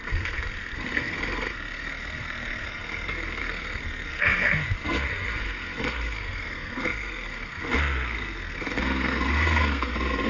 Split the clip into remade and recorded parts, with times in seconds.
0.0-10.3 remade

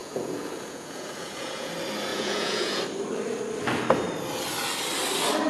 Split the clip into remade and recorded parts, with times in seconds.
0.0-1.7 remade; 1.7-2.1 recorded; 2.1-2.8 remade; 2.8-5.5 recorded

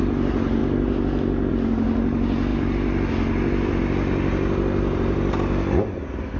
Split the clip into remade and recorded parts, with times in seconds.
0.0-6.4 recorded

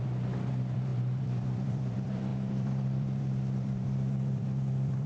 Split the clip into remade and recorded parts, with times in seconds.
0.0-5.1 remade